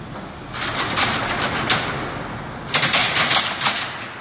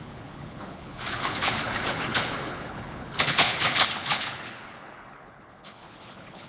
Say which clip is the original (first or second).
first